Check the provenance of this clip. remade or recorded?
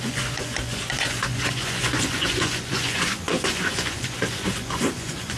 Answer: remade